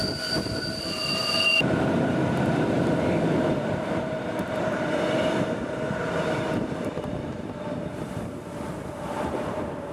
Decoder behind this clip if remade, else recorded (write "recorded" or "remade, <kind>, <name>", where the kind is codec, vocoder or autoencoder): remade, vocoder, BigVGAN v2